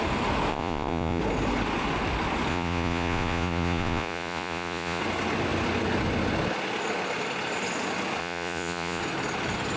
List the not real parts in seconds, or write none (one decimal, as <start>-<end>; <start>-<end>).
0.5-1.2; 2.5-5.0; 8.2-9.0